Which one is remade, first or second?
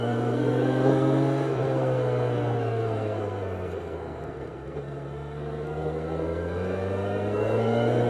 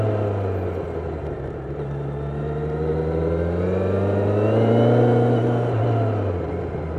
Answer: first